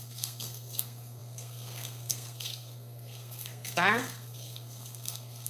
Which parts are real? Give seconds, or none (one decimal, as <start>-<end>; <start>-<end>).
none